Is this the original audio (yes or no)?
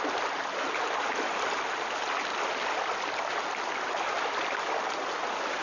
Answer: yes